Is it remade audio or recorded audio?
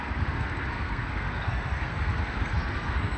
remade